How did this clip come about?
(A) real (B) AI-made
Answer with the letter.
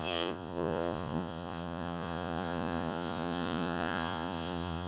B